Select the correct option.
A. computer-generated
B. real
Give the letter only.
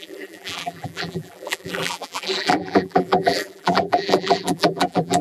A